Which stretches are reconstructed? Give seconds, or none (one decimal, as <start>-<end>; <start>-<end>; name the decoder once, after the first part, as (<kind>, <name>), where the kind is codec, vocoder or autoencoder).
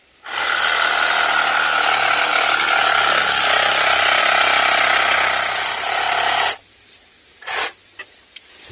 none